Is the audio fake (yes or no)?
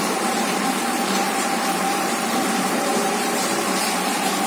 yes